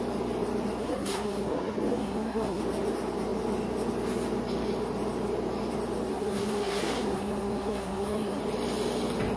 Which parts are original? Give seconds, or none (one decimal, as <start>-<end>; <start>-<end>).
0.0-0.8; 2.6-6.1; 8.4-9.4